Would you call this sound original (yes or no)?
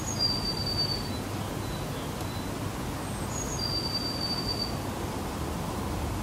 yes